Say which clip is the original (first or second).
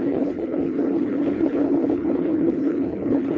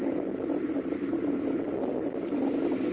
second